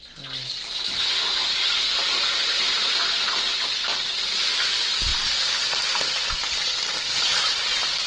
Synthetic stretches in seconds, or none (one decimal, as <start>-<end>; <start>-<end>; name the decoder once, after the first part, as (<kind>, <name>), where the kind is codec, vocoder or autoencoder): none